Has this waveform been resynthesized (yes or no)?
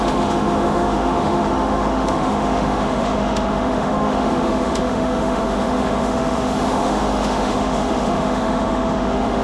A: yes